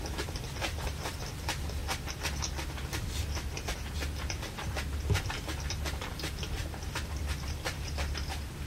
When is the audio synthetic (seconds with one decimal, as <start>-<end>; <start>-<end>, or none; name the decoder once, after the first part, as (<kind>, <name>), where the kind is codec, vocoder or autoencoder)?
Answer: 0.0-1.8 (vocoder, BigVGAN v2); 5.2-6.6; 7.2-8.7